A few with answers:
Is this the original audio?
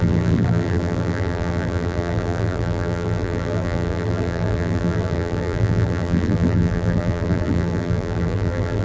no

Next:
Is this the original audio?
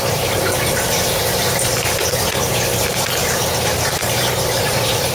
no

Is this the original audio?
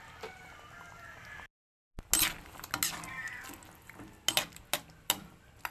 yes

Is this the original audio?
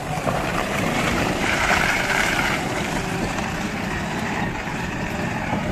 no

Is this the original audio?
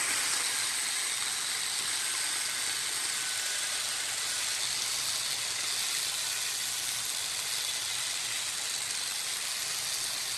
yes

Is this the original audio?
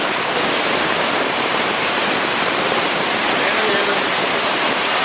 no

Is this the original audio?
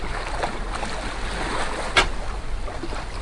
yes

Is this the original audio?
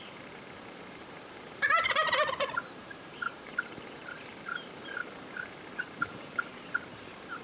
no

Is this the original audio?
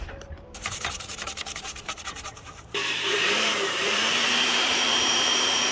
no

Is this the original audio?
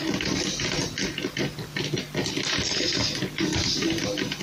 yes